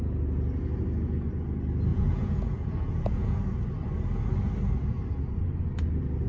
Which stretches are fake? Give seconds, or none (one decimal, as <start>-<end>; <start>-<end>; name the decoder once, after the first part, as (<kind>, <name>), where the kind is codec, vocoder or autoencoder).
1.9-3.4 (vocoder, Vocos)